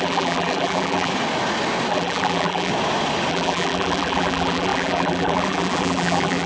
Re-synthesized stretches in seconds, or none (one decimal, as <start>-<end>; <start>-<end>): 0.0-1.1; 1.9-2.7; 3.3-6.5